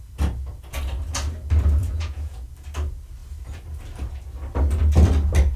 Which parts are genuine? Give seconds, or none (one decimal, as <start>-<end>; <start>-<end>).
0.0-1.8; 2.5-5.6